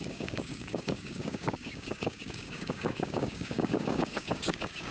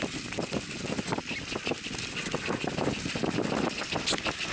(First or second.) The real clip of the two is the second